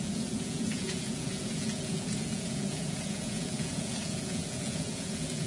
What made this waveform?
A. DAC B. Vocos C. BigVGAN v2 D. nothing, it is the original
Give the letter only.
B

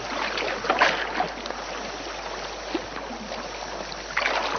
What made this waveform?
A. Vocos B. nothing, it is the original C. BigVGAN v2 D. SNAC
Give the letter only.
B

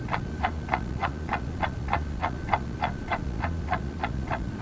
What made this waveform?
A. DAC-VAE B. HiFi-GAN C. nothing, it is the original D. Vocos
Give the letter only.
D